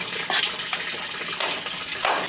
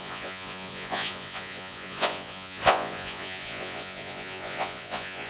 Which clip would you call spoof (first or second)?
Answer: second